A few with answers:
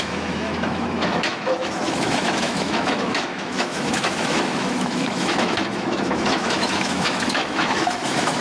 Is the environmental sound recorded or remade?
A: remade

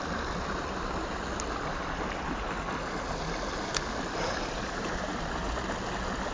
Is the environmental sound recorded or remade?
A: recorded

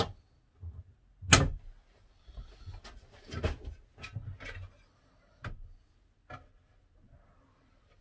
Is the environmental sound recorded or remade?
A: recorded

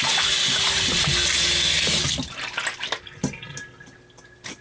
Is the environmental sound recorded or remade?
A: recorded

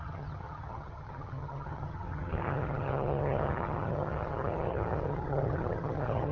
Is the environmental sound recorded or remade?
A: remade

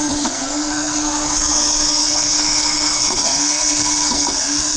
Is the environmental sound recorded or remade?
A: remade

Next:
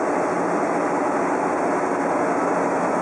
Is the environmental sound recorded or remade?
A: recorded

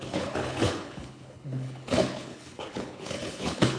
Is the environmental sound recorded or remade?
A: remade